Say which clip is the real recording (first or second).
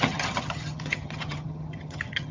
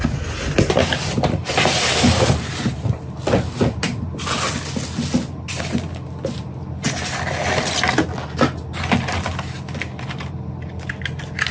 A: second